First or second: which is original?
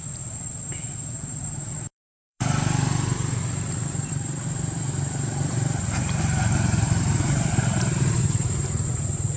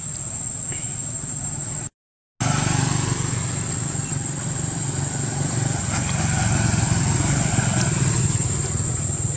second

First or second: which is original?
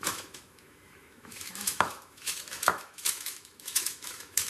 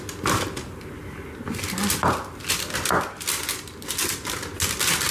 second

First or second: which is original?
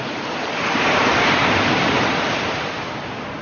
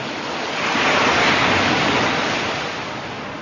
second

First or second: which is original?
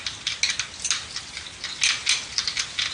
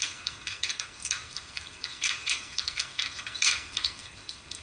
first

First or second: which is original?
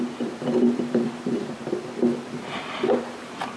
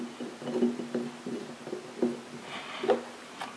second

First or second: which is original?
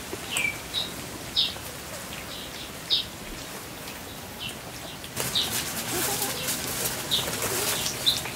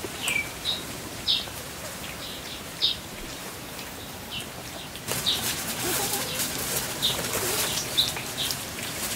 first